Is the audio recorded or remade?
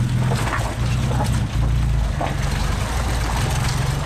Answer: recorded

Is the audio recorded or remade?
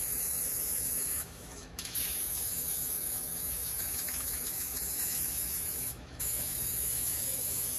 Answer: remade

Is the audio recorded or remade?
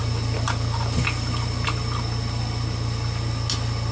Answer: recorded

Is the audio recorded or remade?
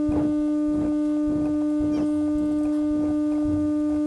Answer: recorded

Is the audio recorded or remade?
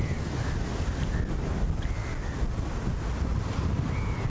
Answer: recorded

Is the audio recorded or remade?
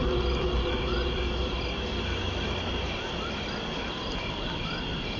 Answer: recorded